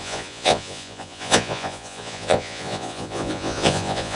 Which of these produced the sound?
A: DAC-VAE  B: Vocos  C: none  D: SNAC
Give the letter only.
B